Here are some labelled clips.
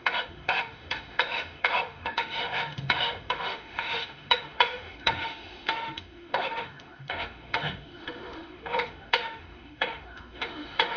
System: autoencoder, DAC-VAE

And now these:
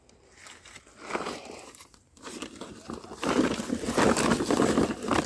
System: none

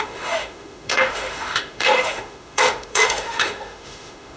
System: autoencoder, DAC-VAE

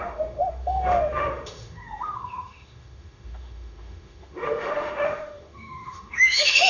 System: autoencoder, DAC-VAE